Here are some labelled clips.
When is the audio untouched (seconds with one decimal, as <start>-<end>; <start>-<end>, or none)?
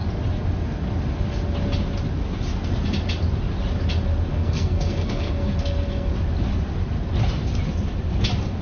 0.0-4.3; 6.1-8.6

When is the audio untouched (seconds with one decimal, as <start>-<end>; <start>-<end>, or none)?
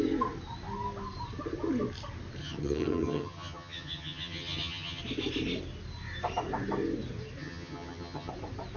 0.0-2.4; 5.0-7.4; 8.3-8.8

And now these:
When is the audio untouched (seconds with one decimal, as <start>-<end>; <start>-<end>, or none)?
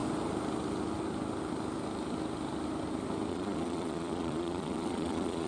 0.0-3.3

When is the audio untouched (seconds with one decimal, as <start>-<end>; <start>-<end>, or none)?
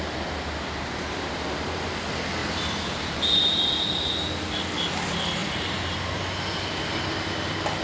0.0-2.4; 3.8-5.4; 6.2-7.8